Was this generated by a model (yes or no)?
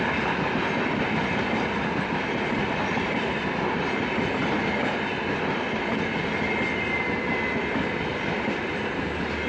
no